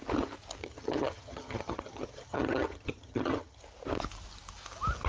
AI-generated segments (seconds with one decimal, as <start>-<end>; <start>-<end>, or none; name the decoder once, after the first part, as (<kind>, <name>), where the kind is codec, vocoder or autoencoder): 0.6-3.6 (vocoder, HiFi-GAN)